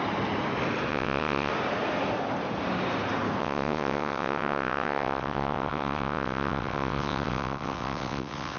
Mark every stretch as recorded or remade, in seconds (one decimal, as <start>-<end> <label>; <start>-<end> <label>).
0.0-0.9 recorded; 0.9-1.5 remade; 1.5-3.4 recorded; 3.4-8.6 remade